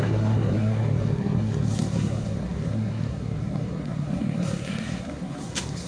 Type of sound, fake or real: fake